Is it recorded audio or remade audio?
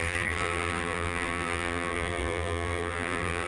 remade